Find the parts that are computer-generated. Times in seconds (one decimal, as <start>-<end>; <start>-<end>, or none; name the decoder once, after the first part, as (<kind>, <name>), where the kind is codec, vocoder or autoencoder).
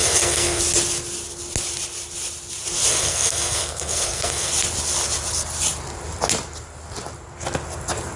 0.0-0.6 (codec, SNAC); 2.9-4.5